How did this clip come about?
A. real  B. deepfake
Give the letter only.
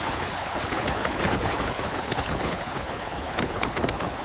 B